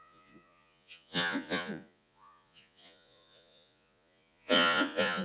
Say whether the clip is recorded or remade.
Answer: remade